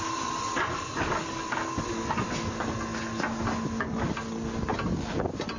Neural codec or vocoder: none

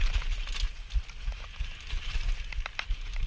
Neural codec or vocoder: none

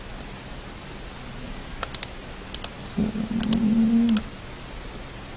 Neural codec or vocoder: none